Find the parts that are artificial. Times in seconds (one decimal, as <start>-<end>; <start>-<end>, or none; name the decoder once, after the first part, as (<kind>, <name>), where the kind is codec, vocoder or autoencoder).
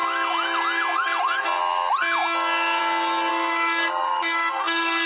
3.3-5.1 (codec, SNAC)